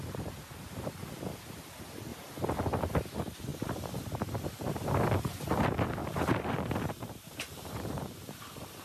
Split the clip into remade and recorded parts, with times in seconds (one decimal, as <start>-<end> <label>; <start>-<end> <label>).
0.0-6.0 recorded; 6.0-8.8 remade

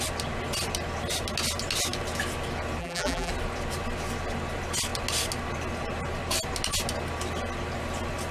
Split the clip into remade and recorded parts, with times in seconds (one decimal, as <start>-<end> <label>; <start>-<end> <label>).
0.0-2.8 recorded; 2.8-3.3 remade; 3.3-8.3 recorded

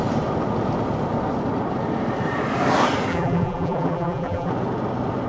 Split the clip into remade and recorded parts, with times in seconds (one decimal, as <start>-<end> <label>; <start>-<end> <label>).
0.0-3.1 recorded; 3.1-4.5 remade; 4.5-5.3 recorded

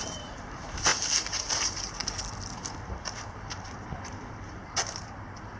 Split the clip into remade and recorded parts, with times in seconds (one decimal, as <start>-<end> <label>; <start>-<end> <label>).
0.0-2.0 remade; 2.0-4.0 recorded; 4.0-5.6 remade

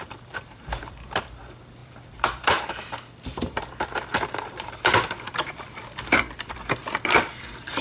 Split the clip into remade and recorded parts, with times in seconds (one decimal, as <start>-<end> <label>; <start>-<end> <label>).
0.0-7.8 remade

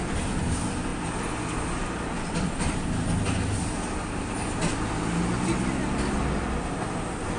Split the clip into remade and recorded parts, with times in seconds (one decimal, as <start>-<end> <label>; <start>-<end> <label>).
0.0-7.4 recorded

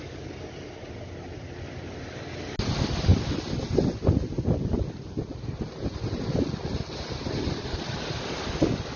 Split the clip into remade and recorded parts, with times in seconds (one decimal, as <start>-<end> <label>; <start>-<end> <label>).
0.0-9.0 recorded

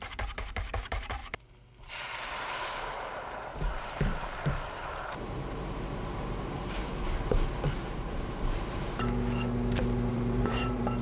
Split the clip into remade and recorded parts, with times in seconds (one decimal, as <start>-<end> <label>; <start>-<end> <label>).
0.0-1.2 remade; 1.2-1.9 recorded; 1.9-6.9 remade; 6.9-10.1 recorded; 10.1-11.0 remade